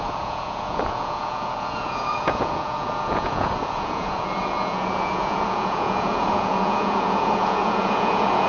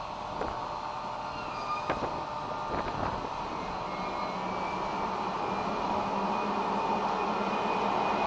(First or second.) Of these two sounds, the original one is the second